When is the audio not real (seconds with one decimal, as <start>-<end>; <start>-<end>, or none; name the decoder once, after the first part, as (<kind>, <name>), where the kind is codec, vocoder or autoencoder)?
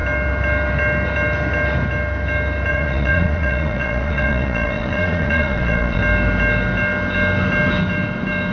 2.7-6.0 (vocoder, Vocos)